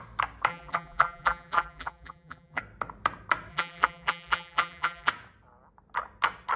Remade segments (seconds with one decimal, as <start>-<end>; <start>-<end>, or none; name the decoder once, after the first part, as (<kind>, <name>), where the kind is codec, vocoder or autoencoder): 0.5-2.6 (vocoder, BigVGAN v2); 3.5-5.1